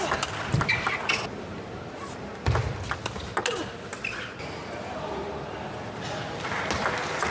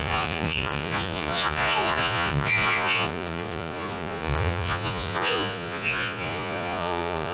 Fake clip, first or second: second